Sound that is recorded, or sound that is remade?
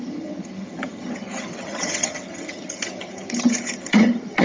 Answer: remade